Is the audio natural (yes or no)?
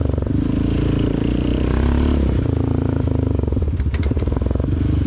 no